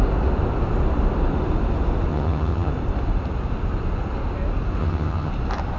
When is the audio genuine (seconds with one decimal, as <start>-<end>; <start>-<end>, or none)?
0.0-2.1; 2.7-4.8; 5.3-5.8